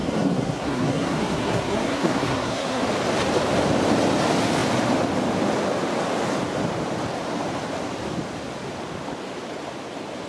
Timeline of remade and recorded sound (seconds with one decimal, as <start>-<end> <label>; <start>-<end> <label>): 0.0-2.8 remade; 2.8-10.3 recorded